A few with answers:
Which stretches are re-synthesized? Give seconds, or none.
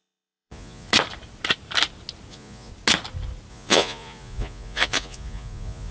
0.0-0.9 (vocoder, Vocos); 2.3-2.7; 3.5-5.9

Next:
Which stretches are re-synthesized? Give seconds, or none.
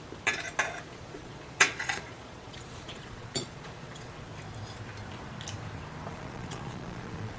0.9-4.1 (vocoder, Vocos); 6.1-7.4